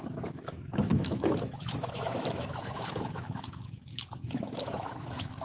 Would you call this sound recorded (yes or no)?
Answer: no